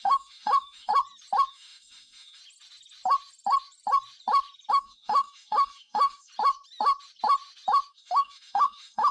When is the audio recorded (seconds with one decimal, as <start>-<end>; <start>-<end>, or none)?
0.9-1.5; 2.4-4.7; 6.3-7.9